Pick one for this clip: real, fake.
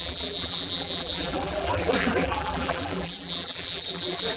fake